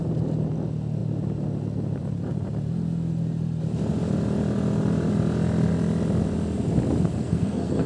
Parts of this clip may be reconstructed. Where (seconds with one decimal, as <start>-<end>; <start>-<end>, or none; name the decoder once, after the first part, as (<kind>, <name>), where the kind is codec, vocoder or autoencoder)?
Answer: 7.1-7.9 (codec, SNAC)